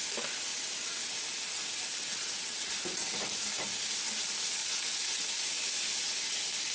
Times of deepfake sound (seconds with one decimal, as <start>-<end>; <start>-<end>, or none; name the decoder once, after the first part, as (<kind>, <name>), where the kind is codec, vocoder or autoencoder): 0.5-1.0 (vocoder, WaveNeXt); 2.1-2.7; 4.6-5.3